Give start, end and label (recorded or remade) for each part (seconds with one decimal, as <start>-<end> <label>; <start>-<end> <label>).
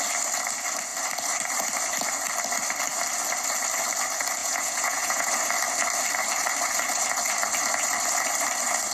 0.0-4.4 recorded; 4.4-5.3 remade; 5.3-8.9 recorded